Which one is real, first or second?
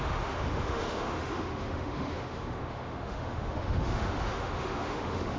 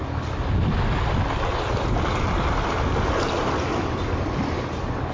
second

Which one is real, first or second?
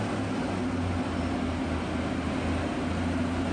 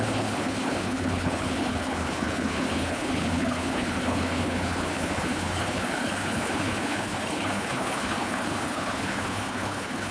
first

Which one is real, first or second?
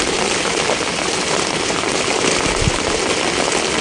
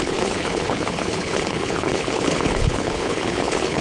first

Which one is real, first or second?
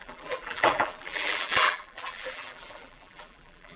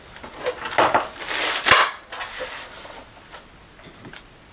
second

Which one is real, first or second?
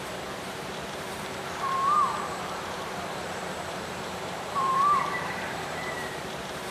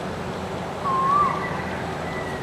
second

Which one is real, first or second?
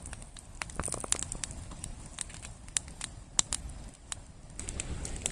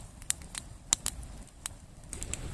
first